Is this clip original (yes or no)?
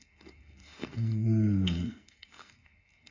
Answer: no